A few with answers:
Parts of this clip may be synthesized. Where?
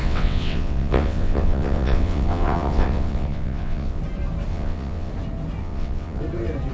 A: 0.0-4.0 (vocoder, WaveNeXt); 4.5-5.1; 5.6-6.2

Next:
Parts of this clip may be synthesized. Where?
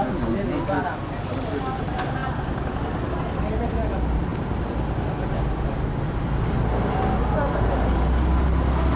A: none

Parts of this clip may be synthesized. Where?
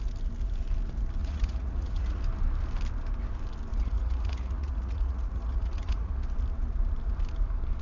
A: 1.2-2.2 (vocoder, Vocos); 3.7-6.1